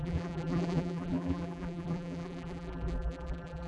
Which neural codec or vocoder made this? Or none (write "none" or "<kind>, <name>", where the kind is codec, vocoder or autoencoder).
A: vocoder, BigVGAN v2